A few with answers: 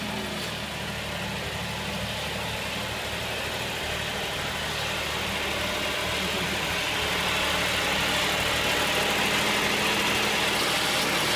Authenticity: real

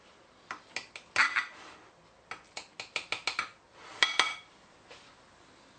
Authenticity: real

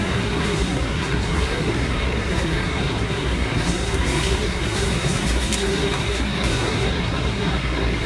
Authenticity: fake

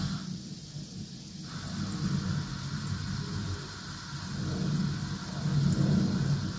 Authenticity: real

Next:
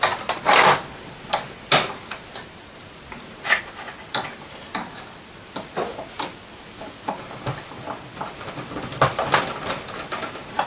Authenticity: real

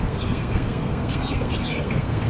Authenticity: fake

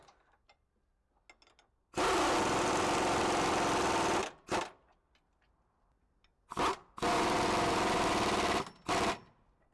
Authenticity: real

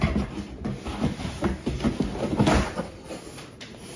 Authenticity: real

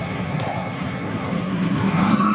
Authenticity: fake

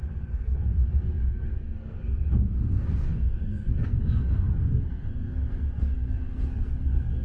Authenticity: fake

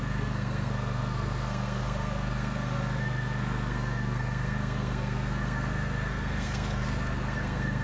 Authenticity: fake